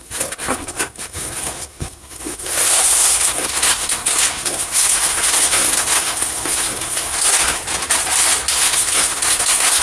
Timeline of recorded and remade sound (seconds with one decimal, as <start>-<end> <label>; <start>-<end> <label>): 0.0-7.6 remade; 7.6-8.5 recorded; 8.5-9.8 remade